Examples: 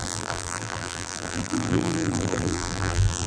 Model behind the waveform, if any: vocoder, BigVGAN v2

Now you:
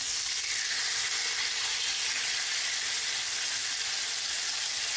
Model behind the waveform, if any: none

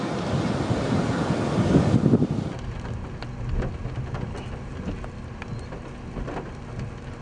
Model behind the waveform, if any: none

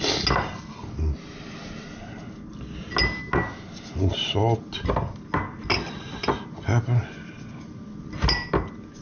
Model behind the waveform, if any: none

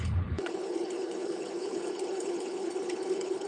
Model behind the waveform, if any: codec, HILCodec